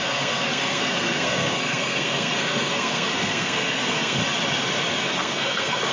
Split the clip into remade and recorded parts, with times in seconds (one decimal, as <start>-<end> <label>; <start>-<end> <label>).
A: 0.0-4.2 remade; 4.2-5.0 recorded; 5.0-5.9 remade